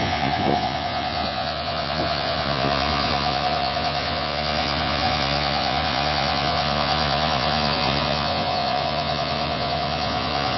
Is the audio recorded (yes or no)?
no